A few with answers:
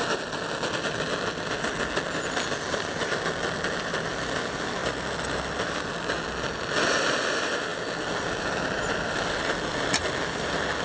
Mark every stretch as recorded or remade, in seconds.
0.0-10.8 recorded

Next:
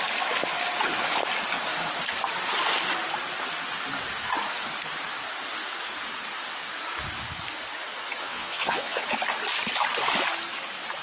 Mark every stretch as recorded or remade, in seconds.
0.0-8.2 recorded; 8.2-9.0 remade; 9.0-11.0 recorded

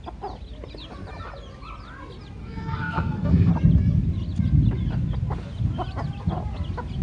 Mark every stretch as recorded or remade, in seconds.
0.0-2.4 recorded; 2.4-3.5 remade; 3.5-7.0 recorded

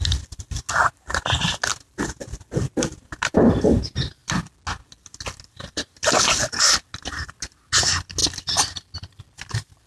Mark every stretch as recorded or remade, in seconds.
0.0-9.9 recorded

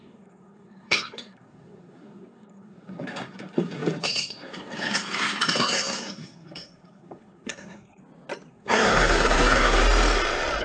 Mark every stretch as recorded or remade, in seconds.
0.0-8.0 remade; 8.0-8.5 recorded; 8.5-9.8 remade; 9.8-10.6 recorded